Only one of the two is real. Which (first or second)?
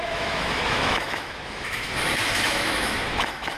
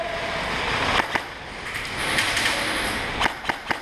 second